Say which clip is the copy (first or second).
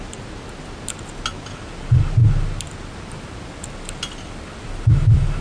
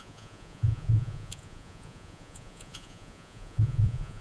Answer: second